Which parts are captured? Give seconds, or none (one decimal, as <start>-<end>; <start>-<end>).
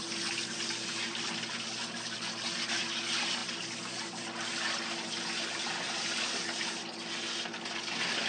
0.0-8.3